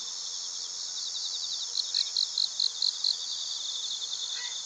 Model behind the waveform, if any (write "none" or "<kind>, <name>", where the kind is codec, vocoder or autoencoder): none